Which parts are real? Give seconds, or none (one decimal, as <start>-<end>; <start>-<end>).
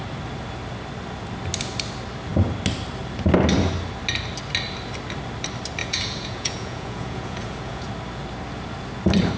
0.0-5.8; 7.9-9.4